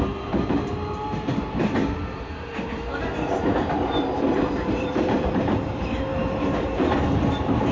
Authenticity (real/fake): fake